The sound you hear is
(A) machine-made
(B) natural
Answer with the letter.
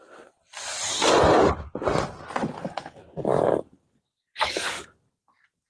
B